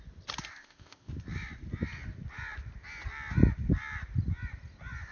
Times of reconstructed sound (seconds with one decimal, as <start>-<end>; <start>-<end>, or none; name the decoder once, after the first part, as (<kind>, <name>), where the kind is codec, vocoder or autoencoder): 0.5-1.1 (codec, ZipCodec)